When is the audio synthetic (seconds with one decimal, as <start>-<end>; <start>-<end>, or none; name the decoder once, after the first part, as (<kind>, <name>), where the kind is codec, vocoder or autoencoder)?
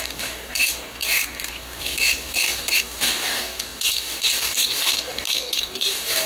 0.0-6.3 (codec, DAC)